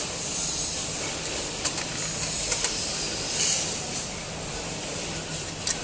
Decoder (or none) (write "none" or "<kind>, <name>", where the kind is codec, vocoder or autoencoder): none